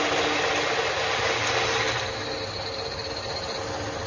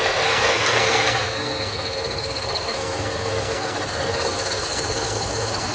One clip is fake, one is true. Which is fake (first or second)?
second